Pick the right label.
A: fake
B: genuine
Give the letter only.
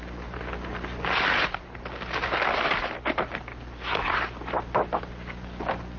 B